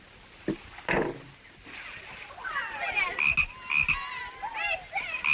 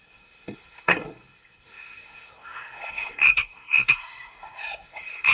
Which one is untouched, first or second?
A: first